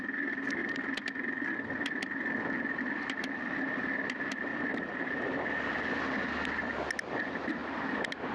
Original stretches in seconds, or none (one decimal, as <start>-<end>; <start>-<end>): 0.0-4.5; 5.6-8.3